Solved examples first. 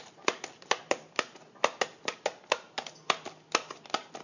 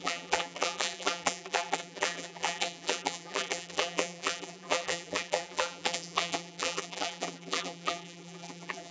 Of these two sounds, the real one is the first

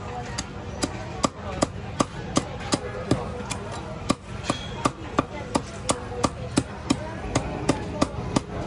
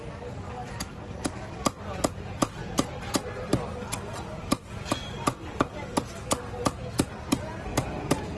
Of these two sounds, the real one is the first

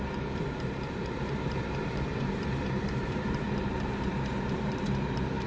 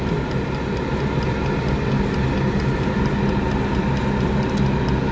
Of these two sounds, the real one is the second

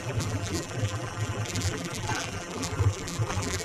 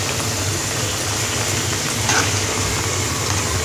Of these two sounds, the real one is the second